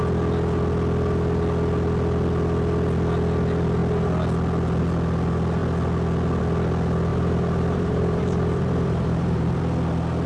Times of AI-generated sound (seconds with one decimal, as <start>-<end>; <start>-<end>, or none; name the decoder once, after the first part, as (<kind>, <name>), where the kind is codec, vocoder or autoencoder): 7.1-9.6 (vocoder, BigVGAN v2)